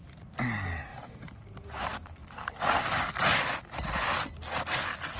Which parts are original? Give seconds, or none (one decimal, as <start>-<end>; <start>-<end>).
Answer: 0.0-0.9; 2.8-5.2